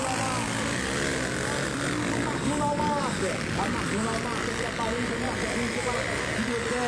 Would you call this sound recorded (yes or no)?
yes